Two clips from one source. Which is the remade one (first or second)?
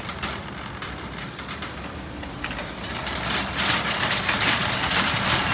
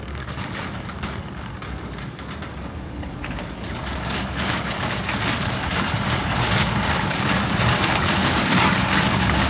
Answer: second